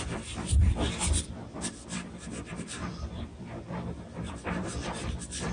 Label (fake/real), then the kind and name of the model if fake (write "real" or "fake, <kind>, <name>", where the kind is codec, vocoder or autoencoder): fake, vocoder, BigVGAN v2